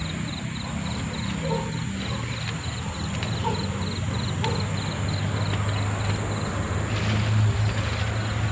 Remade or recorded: recorded